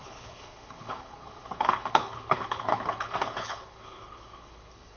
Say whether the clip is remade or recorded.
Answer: remade